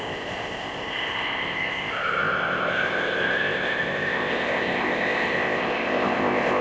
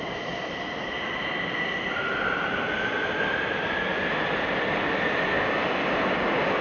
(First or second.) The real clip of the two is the second